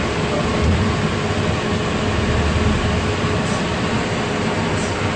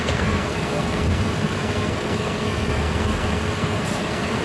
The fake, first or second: second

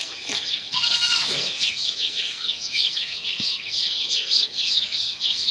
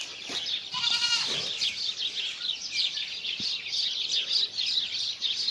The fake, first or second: first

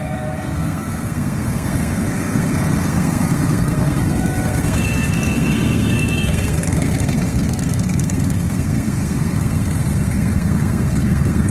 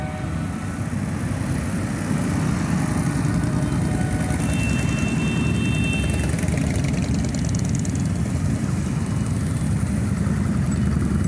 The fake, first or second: first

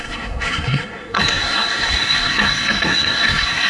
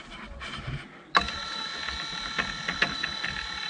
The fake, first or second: first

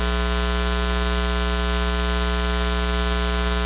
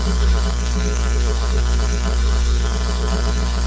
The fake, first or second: second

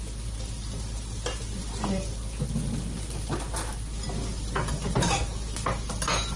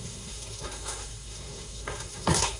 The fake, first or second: second